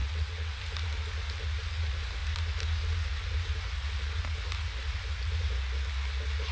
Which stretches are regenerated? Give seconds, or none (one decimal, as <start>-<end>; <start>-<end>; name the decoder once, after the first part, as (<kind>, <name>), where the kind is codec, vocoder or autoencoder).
0.0-0.6 (vocoder, WaveNeXt)